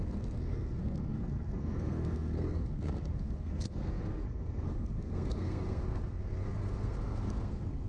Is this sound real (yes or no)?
no